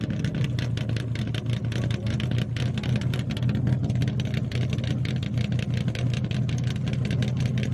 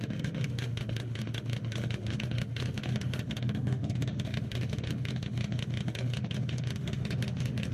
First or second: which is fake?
second